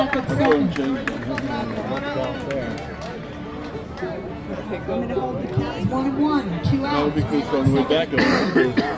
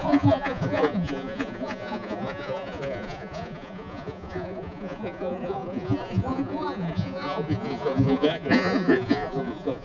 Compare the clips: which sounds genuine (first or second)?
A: first